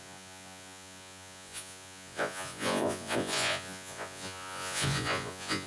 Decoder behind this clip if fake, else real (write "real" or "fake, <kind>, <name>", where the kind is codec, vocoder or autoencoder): fake, vocoder, Vocos